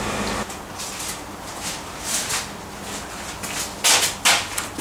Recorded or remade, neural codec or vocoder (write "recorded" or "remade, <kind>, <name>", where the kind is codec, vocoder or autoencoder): recorded